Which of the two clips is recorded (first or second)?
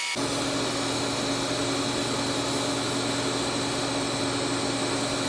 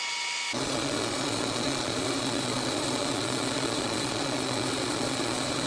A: first